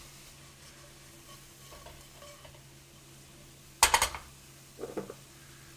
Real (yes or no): yes